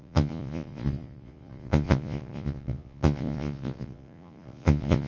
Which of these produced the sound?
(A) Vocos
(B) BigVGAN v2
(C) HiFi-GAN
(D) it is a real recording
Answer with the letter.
A